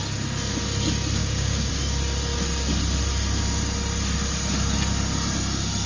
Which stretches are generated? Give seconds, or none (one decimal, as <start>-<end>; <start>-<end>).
1.2-1.7